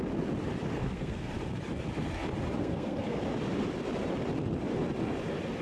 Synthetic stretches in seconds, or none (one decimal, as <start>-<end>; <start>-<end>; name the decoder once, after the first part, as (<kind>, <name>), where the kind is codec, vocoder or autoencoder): 0.8-1.3 (codec, SNAC); 2.6-3.2